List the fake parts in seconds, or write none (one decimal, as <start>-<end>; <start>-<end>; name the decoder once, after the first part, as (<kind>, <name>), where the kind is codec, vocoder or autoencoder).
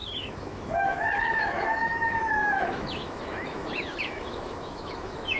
0.0-5.4 (autoencoder, DAC-VAE)